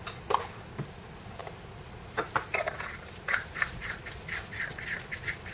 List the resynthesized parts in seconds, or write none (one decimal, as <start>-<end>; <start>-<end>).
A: none

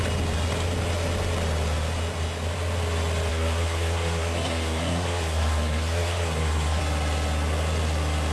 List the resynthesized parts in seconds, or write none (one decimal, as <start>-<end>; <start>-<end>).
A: 3.3-6.8

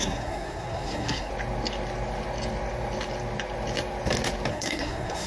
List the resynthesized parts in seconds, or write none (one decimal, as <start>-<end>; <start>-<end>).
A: 0.0-1.3; 4.5-5.3

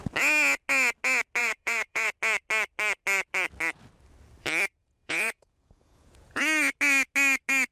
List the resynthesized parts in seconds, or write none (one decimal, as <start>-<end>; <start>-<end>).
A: 1.4-2.1; 4.8-6.4

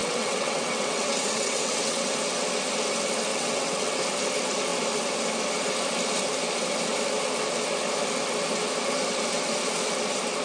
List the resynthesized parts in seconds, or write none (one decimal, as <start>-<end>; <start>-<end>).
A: 0.0-2.1; 3.3-4.0

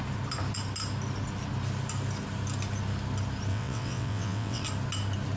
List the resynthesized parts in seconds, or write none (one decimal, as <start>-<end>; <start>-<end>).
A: 3.5-4.6

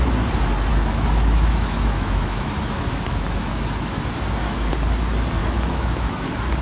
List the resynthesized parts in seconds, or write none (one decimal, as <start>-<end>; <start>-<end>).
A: 0.7-4.7; 5.4-6.1